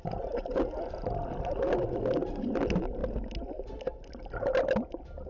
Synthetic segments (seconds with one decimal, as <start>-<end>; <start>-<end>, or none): none